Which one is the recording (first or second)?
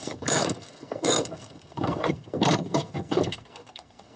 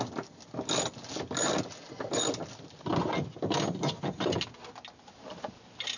second